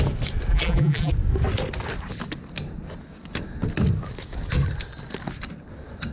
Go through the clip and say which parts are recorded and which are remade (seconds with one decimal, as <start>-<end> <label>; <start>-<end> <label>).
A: 0.0-0.5 recorded; 0.5-1.1 remade; 1.1-6.1 recorded